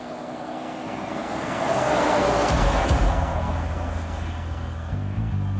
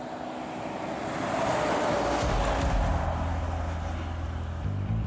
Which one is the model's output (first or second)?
first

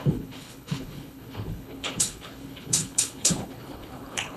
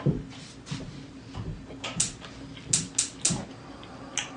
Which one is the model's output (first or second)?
first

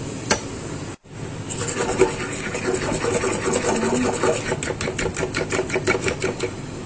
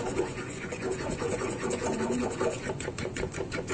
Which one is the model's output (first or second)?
second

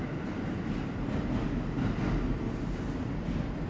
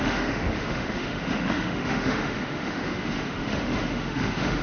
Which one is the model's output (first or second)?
second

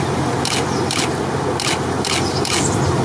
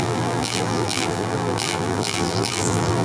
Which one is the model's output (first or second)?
second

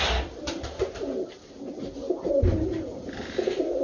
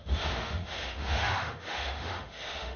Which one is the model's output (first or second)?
second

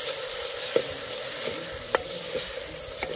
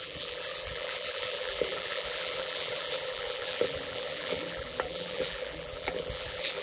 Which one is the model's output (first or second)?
second